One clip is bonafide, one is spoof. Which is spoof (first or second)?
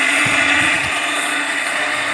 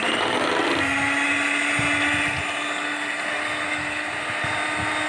first